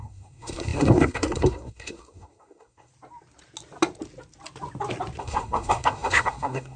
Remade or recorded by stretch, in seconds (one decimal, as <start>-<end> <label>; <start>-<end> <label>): 0.0-2.9 remade; 2.9-5.2 recorded; 5.2-6.8 remade